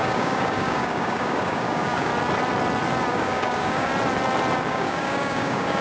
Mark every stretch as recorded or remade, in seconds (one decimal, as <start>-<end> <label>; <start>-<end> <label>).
0.0-2.1 remade; 2.1-3.1 recorded; 3.1-3.9 remade; 3.9-4.7 recorded; 4.7-5.8 remade